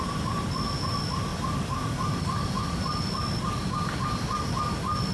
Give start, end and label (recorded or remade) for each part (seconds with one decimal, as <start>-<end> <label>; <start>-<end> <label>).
0.0-5.1 recorded